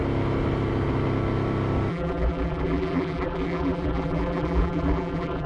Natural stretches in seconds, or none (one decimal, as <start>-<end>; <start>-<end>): 0.0-1.9